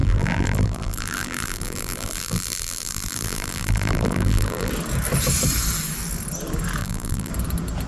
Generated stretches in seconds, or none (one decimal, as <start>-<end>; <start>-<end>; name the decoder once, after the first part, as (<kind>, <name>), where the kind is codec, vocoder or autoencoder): 0.0-4.7 (vocoder, BigVGAN v2); 6.8-7.3